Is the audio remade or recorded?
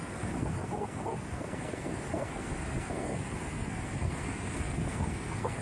remade